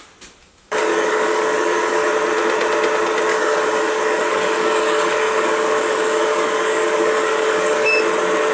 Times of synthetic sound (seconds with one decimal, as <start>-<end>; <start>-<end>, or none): 0.4-2.1; 3.3-8.0

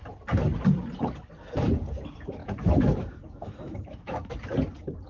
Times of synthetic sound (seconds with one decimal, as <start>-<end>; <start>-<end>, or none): 2.4-4.3

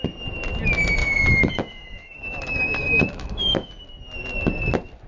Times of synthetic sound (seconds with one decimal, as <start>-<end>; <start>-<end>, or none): 1.0-3.7

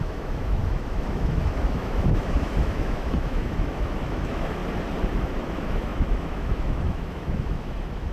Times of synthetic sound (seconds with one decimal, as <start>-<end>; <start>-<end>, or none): 0.0-4.6; 5.2-8.1

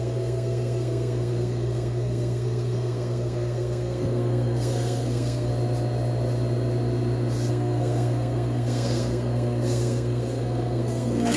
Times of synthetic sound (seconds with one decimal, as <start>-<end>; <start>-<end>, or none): 0.0-5.5; 7.5-11.4

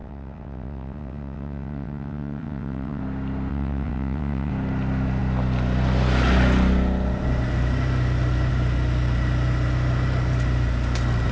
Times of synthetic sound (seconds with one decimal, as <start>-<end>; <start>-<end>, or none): 0.0-3.0; 3.5-4.5

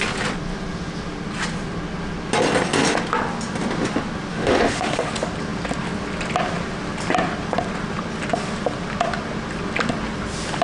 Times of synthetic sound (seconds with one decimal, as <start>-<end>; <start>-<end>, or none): 4.3-5.1